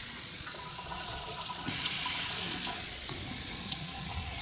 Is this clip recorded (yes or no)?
no